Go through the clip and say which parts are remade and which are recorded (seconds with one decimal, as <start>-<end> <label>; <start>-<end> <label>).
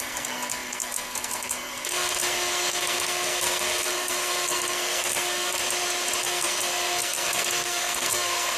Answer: 0.0-5.6 remade; 5.6-6.2 recorded; 6.2-8.6 remade